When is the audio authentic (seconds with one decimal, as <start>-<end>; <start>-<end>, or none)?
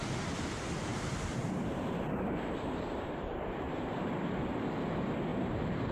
0.0-0.9; 4.4-5.3